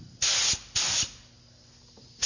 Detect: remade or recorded recorded